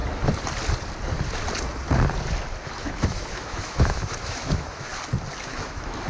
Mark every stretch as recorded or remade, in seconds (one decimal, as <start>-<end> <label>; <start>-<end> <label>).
0.0-2.6 recorded; 2.6-4.9 remade; 4.9-5.4 recorded; 5.4-6.1 remade